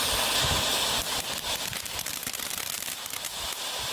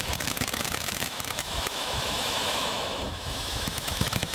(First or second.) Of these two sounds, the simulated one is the second